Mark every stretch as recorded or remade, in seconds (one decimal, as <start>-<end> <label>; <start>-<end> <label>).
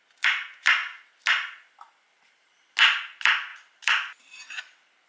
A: 0.0-5.1 recorded